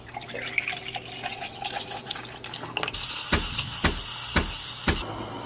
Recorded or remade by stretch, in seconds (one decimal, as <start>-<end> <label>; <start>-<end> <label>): 0.0-1.3 recorded; 1.3-2.2 remade; 2.2-5.5 recorded